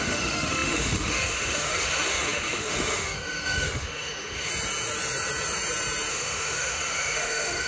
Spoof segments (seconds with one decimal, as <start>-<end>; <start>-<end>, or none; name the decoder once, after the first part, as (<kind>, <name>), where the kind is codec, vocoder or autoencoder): 0.0-4.5 (autoencoder, DAC-VAE); 6.1-7.7